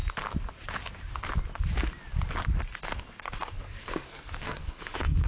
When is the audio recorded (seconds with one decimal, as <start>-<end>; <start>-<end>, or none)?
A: 0.0-3.2